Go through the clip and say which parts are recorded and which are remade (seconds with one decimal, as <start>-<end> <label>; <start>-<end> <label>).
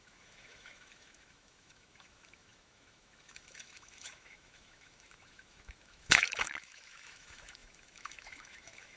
0.0-9.0 remade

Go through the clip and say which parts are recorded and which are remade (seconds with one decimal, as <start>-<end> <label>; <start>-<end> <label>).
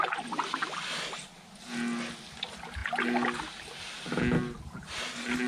0.0-5.5 recorded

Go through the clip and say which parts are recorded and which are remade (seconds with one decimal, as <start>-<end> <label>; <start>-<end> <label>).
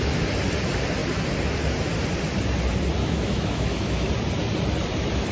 0.0-3.0 recorded; 3.0-4.1 remade; 4.1-5.3 recorded